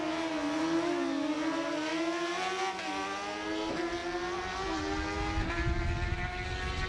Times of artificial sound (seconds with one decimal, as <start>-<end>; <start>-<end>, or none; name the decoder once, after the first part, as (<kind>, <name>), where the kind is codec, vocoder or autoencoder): none